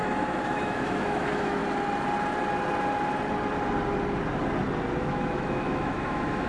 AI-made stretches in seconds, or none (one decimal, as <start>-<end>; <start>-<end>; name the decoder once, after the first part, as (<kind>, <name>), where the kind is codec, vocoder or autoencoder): 0.0-1.6 (autoencoder, DAC-VAE); 5.0-6.5